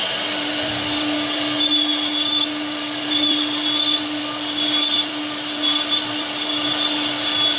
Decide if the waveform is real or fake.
real